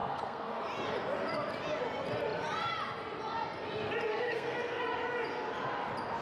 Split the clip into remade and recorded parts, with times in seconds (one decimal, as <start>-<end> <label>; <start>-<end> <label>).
0.0-0.6 remade; 0.6-4.1 recorded; 4.1-4.8 remade; 4.8-6.2 recorded